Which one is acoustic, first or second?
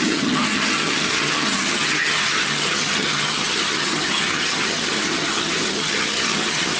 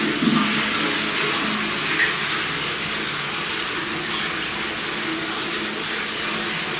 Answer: second